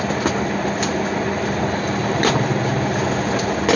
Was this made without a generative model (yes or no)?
yes